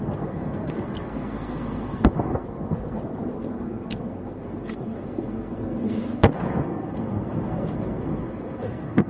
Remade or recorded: remade